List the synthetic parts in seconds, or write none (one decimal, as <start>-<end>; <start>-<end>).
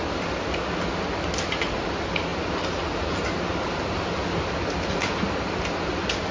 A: none